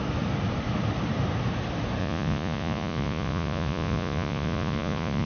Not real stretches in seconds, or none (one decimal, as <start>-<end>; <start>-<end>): 2.0-5.3